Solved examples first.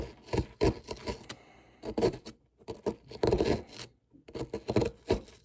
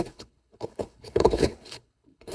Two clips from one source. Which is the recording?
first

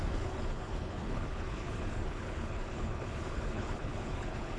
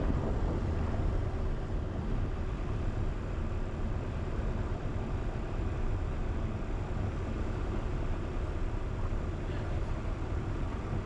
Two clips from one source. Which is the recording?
second